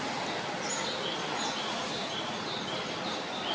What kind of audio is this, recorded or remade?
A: remade